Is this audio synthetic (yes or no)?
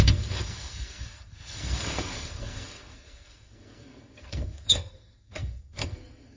yes